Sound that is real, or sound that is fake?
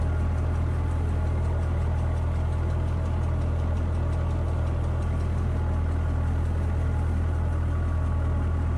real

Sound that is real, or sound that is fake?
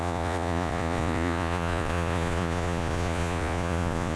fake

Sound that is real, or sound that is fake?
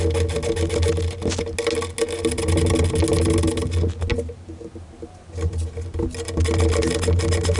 real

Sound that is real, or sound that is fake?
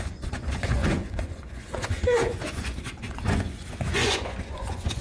fake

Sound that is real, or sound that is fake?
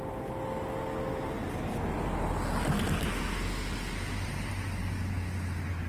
real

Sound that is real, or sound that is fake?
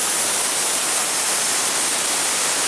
real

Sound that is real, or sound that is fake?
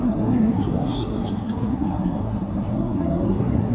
fake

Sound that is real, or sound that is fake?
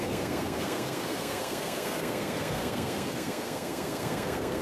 fake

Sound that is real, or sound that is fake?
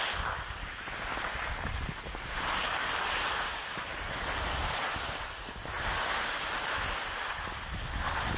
real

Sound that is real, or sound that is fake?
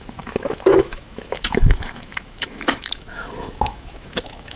fake